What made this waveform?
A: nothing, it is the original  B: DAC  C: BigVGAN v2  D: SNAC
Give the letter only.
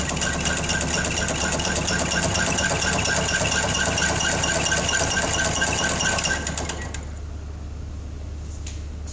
A